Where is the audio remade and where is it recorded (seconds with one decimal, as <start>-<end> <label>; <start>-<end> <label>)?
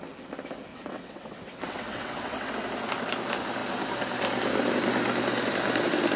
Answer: 0.0-0.7 recorded; 0.7-2.5 remade; 2.5-6.2 recorded